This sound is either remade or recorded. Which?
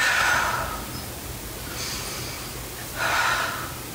recorded